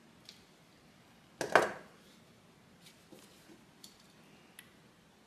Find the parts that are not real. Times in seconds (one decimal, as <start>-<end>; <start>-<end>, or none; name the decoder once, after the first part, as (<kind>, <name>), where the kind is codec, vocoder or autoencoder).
none